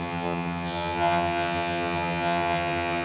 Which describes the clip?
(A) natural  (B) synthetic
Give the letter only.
B